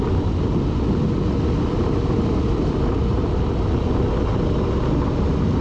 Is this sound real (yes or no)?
yes